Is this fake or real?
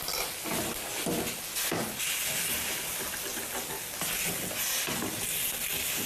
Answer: real